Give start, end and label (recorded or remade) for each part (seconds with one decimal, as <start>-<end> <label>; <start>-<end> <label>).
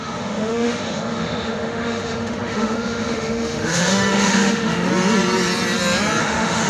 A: 0.0-4.9 remade; 4.9-6.2 recorded; 6.2-6.7 remade